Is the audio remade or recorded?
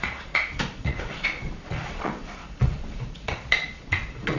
remade